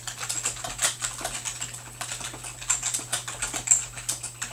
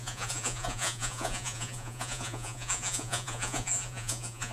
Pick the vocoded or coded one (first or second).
second